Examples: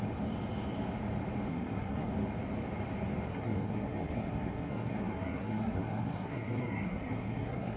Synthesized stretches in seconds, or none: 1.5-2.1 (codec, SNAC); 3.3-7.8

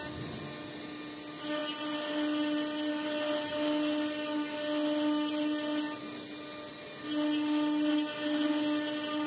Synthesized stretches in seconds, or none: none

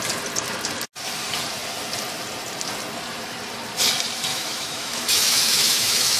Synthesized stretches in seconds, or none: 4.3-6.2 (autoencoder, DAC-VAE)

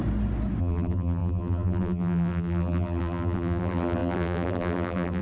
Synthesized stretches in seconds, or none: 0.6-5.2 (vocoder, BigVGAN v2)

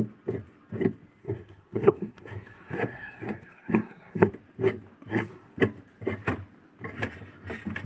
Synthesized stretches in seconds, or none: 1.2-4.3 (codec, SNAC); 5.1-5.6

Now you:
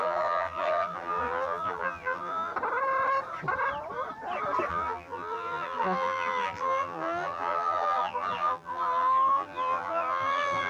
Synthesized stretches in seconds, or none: 0.0-2.5 (vocoder, BigVGAN v2); 4.7-10.7

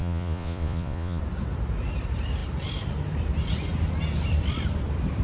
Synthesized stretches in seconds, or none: 0.0-1.2 (vocoder, Vocos)

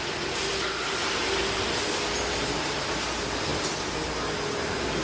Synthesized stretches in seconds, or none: none